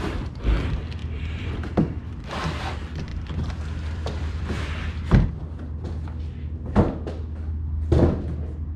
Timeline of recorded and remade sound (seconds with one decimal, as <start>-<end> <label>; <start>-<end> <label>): 0.0-1.0 recorded; 1.0-2.1 remade; 2.1-3.1 recorded; 3.1-5.3 remade; 5.3-8.8 recorded